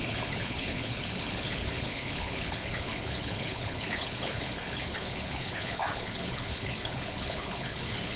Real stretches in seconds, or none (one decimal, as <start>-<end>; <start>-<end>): none